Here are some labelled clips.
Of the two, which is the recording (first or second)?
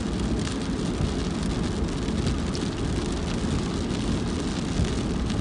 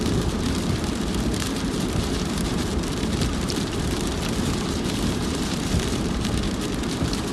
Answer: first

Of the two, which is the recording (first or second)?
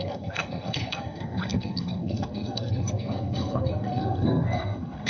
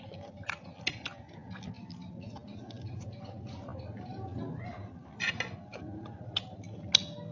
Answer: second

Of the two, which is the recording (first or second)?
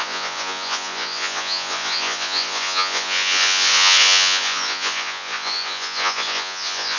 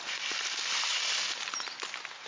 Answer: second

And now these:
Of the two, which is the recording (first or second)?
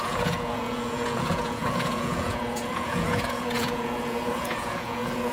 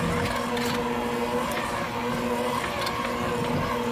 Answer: second